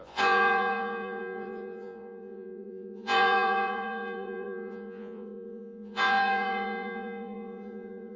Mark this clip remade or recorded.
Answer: remade